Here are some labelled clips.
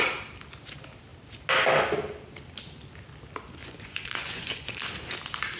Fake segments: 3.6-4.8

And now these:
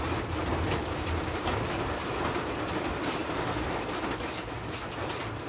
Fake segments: 0.0-3.2; 5.0-5.5